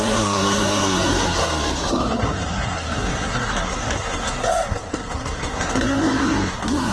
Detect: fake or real fake